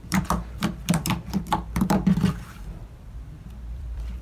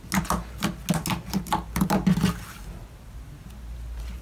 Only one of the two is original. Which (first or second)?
second